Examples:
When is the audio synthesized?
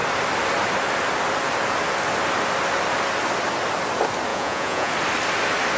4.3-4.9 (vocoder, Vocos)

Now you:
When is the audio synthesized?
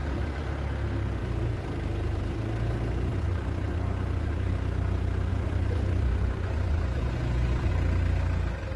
0.0-0.5 (vocoder, Vocos); 3.1-4.5; 5.3-7.7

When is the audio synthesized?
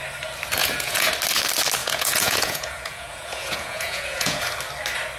0.6-1.1 (vocoder, Vocos); 1.8-4.4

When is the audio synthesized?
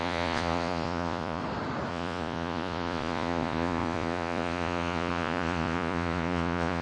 0.0-1.4 (vocoder, Vocos); 1.9-6.8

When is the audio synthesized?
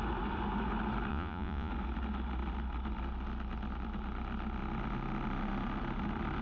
1.1-1.7 (vocoder, Vocos)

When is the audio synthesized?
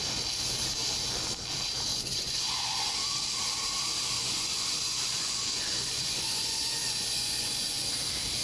1.9-2.9 (vocoder, Vocos); 4.2-7.8